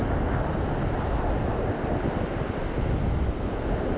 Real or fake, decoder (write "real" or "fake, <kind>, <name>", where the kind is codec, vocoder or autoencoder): real